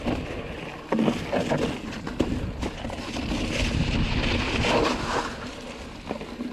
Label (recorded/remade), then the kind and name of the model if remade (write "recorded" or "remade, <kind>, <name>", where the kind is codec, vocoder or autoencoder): recorded